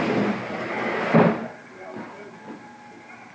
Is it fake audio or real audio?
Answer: real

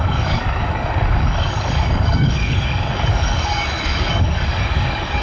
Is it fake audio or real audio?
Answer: fake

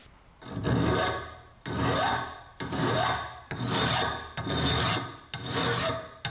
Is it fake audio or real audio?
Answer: real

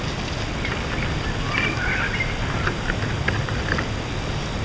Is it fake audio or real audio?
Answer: real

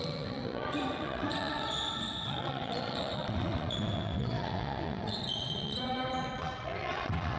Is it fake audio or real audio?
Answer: fake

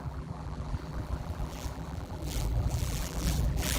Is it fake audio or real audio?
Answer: fake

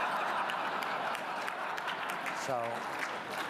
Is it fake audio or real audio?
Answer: real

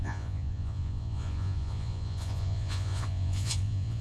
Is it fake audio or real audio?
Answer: fake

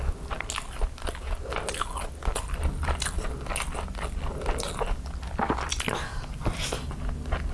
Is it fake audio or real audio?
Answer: real